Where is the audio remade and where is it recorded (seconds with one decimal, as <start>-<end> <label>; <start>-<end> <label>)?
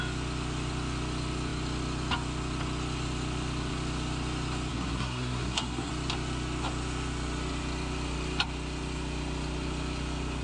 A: 0.0-4.7 recorded; 4.7-5.9 remade; 5.9-10.4 recorded